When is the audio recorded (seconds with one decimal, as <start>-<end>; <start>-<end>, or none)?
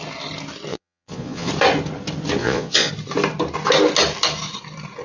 0.0-0.7; 1.5-2.4; 2.9-5.0